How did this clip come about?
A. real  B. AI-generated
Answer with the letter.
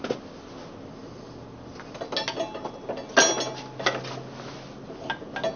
A